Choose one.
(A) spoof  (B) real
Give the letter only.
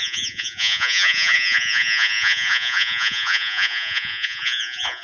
A